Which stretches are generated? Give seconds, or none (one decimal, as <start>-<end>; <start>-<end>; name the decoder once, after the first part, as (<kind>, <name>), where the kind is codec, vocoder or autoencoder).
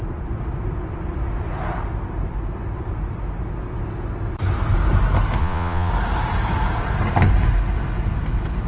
5.4-5.9 (vocoder, Vocos)